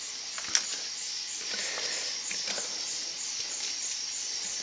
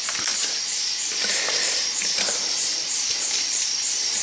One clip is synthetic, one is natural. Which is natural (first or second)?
first